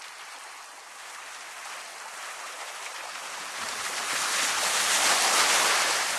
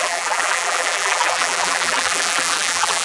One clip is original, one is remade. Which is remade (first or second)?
second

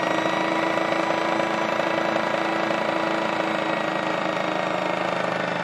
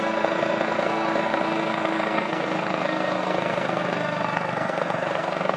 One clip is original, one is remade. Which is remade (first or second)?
second